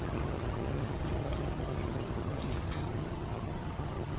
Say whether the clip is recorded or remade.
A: remade